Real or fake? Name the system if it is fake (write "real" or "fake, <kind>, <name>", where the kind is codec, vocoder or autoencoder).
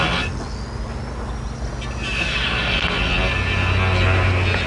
real